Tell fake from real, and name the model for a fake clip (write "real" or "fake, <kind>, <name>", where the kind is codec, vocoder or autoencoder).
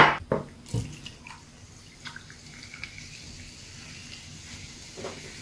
fake, vocoder, BigVGAN v2